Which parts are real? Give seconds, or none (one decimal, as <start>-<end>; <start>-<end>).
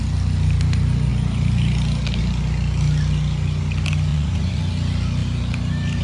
0.0-4.1; 4.6-6.0